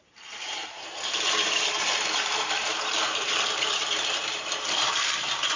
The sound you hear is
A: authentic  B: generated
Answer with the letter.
B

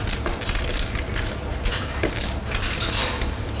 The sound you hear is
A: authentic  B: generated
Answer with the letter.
A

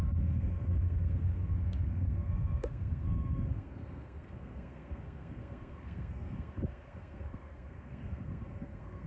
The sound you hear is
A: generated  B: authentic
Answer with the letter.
A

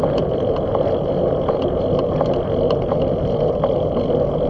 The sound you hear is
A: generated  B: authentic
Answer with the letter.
B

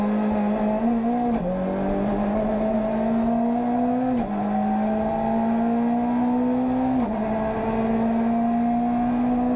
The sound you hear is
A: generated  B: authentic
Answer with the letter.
B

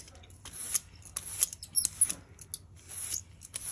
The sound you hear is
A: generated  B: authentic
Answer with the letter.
B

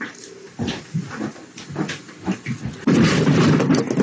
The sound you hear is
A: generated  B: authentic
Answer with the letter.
B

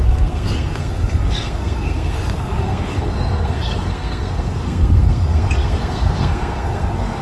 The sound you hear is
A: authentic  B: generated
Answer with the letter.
B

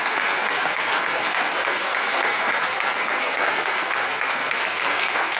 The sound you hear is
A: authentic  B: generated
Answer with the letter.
B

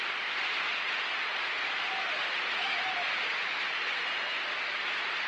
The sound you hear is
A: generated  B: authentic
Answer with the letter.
B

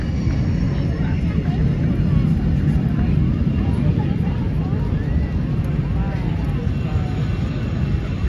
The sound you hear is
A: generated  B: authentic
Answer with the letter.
B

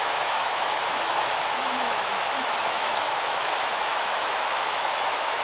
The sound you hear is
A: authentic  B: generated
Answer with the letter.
B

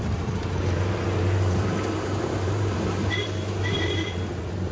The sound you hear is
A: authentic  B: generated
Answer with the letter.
B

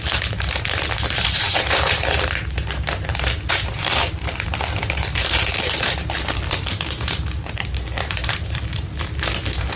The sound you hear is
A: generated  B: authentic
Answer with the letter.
A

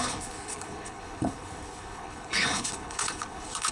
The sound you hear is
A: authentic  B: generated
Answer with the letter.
B